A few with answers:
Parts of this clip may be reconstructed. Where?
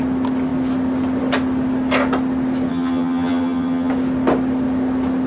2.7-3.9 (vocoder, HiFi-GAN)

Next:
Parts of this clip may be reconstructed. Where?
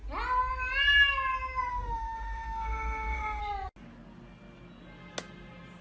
1.7-3.4 (autoencoder, DAC-VAE)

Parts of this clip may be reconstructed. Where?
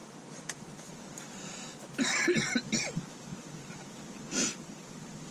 none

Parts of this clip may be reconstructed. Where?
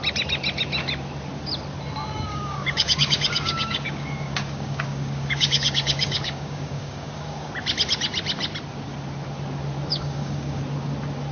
2.3-7.5 (codec, DAC); 9.9-10.6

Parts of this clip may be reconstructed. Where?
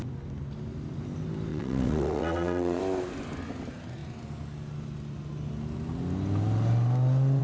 1.5-2.8 (vocoder, WaveNeXt)